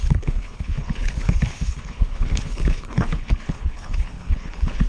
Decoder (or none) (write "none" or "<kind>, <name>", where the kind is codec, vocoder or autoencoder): codec, HILCodec